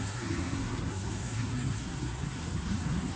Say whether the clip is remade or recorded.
remade